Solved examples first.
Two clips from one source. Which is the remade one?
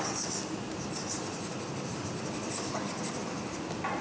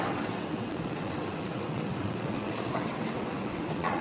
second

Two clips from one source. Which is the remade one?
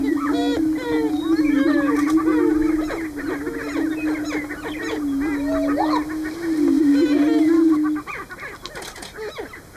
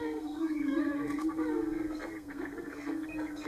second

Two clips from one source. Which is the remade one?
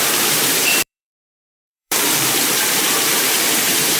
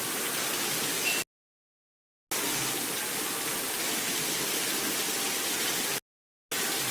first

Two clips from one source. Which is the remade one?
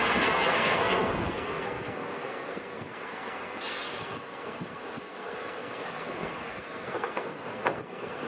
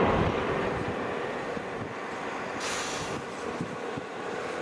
first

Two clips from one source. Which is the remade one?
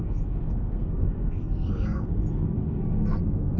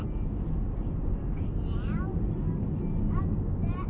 first